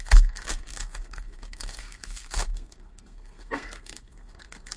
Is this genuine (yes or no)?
no